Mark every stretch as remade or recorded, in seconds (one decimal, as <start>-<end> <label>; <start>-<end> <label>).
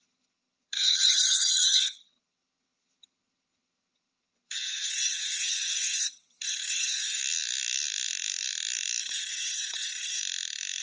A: 0.0-7.2 remade; 7.2-9.0 recorded; 9.0-10.2 remade; 10.2-10.8 recorded